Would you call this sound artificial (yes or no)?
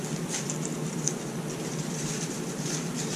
no